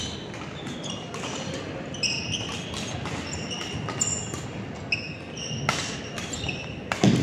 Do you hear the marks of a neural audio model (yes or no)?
no